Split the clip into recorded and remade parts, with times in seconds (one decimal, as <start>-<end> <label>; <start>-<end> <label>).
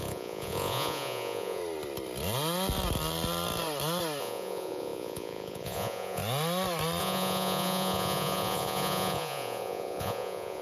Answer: 0.0-1.6 remade; 1.6-4.2 recorded; 4.2-6.2 remade; 6.2-7.0 recorded; 7.0-10.6 remade